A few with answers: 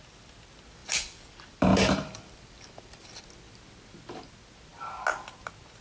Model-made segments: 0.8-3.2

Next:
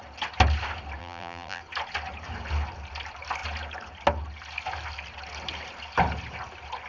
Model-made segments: 1.0-1.6

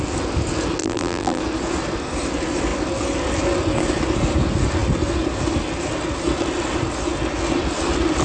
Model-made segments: 0.8-1.4

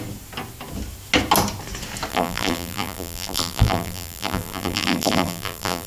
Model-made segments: 2.1-5.9

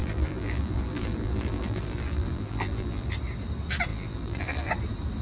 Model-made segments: 0.0-3.1; 3.9-4.7